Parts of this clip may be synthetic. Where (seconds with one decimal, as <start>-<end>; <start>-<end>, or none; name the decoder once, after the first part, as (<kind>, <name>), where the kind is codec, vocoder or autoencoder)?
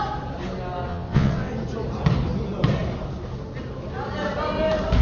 0.9-1.5 (vocoder, WaveNeXt)